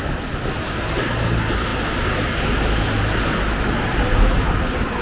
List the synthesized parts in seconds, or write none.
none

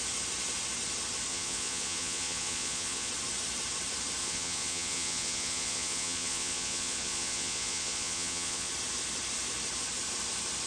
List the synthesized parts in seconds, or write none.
1.3-3.1 (vocoder, Vocos); 4.2-8.7

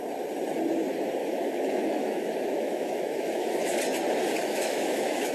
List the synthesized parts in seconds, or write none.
1.2-3.8 (autoencoder, DAC-VAE); 4.4-5.3

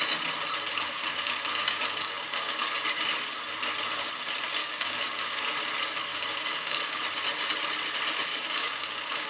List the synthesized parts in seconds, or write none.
0.7-3.1 (codec, DAC); 4.6-5.4; 6.1-7.0; 8.3-9.3

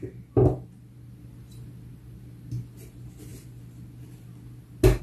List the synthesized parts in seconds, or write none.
none

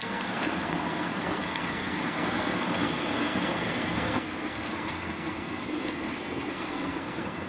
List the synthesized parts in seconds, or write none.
0.0-7.5 (codec, SNAC)

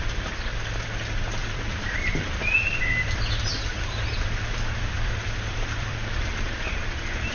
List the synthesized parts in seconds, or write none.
1.4-2.8 (vocoder, BigVGAN v2); 3.5-6.6